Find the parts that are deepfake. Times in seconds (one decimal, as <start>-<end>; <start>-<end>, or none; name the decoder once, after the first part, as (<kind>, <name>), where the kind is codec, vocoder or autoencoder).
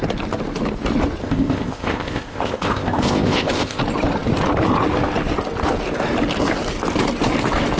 1.2-3.8 (codec, ZipCodec)